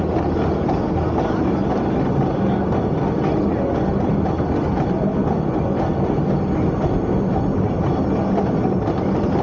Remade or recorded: recorded